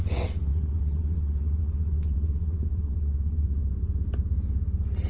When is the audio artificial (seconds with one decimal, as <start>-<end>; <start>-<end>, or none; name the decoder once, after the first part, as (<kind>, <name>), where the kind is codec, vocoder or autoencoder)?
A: 0.0-3.6 (vocoder, WaveNeXt)